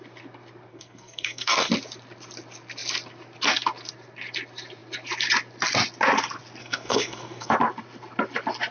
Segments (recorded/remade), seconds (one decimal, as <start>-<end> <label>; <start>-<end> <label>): 0.0-0.7 recorded; 0.7-1.7 remade; 1.7-6.6 recorded; 6.6-7.5 remade; 7.5-8.7 recorded